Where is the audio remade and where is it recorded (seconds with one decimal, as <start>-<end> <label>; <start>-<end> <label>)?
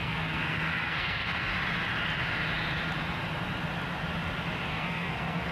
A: 0.0-1.5 remade; 1.5-4.7 recorded; 4.7-5.5 remade